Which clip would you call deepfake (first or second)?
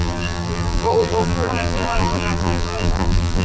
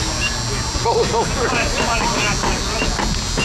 first